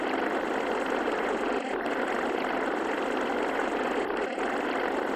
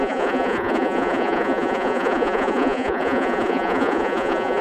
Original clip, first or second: first